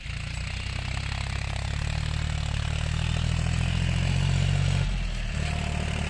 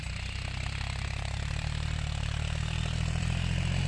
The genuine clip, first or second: first